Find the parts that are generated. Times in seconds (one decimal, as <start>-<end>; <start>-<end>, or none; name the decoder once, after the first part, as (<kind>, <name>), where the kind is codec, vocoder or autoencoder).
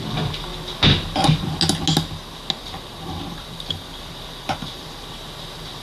2.6-5.1 (vocoder, BigVGAN v2)